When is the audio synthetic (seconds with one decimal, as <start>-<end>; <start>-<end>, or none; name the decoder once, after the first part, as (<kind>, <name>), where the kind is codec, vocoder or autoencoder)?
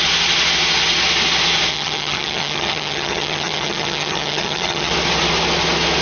1.7-4.9 (vocoder, HiFi-GAN)